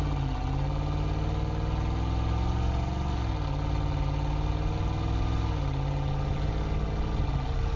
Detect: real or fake real